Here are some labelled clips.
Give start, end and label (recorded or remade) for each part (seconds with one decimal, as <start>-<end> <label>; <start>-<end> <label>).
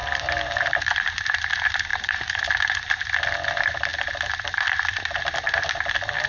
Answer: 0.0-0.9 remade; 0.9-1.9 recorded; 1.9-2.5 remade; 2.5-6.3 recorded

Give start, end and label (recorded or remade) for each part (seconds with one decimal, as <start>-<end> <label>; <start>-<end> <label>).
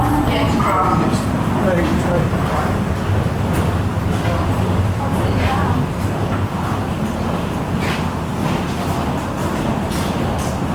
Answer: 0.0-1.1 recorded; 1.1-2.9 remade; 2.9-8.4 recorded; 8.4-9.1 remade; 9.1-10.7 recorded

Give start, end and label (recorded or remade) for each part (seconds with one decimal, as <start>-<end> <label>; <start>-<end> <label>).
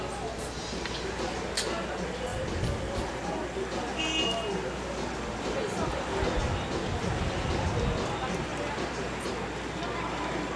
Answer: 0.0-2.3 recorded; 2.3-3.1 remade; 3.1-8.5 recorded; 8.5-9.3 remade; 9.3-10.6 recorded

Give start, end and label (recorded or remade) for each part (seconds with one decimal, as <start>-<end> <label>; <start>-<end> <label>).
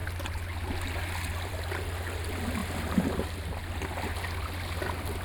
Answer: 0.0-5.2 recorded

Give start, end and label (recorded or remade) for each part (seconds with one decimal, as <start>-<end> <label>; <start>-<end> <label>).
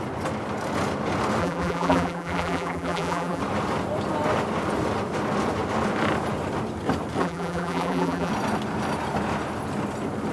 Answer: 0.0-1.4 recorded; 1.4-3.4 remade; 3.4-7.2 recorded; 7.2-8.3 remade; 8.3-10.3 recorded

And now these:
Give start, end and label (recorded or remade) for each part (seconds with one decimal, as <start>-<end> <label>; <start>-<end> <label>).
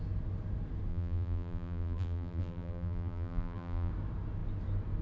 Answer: 0.0-0.9 recorded; 0.9-3.9 remade; 3.9-5.0 recorded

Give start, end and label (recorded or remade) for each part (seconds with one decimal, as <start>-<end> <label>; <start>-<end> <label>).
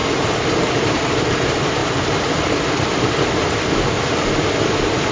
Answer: 0.0-1.8 remade; 1.8-5.1 recorded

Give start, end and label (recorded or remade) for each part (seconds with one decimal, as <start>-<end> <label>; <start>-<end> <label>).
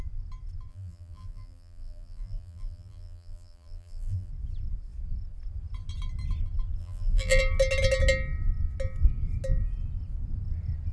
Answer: 0.0-0.7 recorded; 0.7-4.3 remade; 4.3-6.8 recorded; 6.8-7.4 remade; 7.4-10.9 recorded